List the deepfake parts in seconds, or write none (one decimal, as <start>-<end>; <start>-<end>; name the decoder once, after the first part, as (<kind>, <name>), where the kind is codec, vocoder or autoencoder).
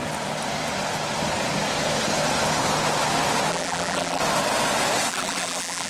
3.5-4.2 (vocoder, BigVGAN v2); 5.1-5.9